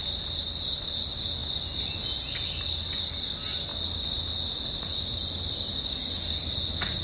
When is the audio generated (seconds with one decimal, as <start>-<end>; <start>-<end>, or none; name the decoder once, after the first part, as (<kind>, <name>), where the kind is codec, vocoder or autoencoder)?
none